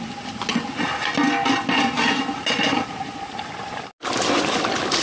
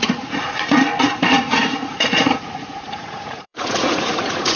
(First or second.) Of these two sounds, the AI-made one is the second